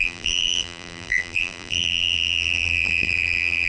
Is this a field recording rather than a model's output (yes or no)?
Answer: no